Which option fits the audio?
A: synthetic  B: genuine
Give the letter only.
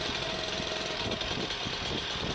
B